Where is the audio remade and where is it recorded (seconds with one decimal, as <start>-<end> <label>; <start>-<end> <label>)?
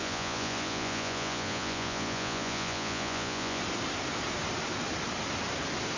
0.0-3.6 remade; 3.6-6.0 recorded